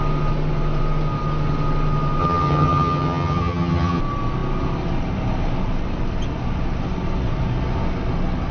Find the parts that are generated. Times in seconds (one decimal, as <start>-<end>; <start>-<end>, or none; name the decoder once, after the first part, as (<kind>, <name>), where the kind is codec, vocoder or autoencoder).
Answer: 2.2-4.0 (vocoder, HiFi-GAN)